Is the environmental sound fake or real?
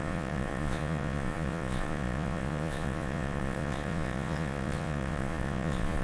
fake